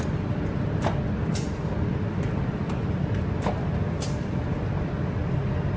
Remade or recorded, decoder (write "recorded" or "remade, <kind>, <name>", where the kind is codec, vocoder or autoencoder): recorded